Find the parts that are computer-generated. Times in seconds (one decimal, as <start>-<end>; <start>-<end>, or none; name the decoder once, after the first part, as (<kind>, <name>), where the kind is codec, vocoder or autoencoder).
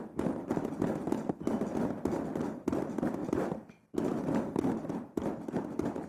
none